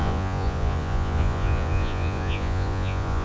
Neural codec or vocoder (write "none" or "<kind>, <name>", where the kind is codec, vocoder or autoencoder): vocoder, Vocos